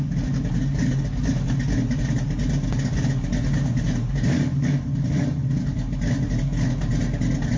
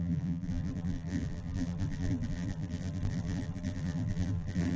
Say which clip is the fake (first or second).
second